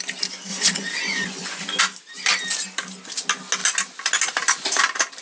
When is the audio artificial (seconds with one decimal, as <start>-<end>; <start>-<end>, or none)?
0.5-1.8